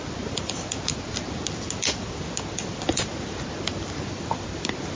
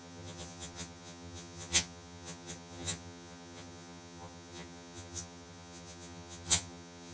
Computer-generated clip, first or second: second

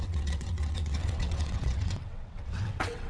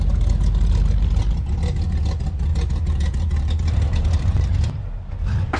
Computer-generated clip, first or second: first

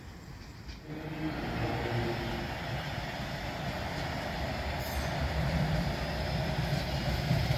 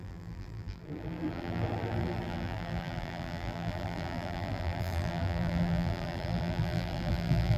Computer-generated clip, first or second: second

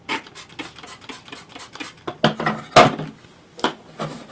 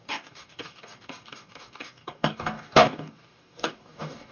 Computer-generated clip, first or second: second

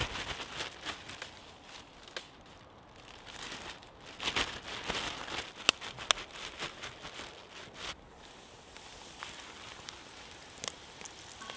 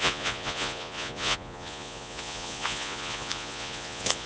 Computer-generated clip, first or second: second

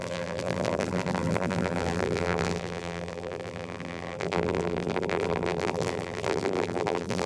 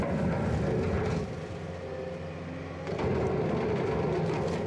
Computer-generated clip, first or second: first